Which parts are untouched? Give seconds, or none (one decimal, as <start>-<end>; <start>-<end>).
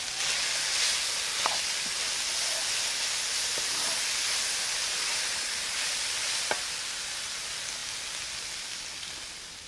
0.0-9.7